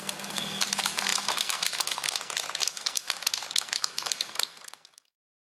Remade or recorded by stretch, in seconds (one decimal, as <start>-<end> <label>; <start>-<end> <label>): 0.0-5.4 remade